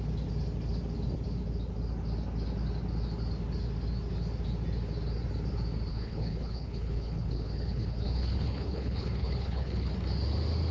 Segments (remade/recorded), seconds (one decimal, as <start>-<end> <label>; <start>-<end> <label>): 0.0-5.9 recorded; 5.9-9.9 remade; 9.9-10.7 recorded